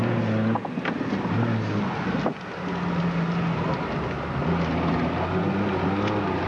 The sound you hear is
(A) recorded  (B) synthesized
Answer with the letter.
A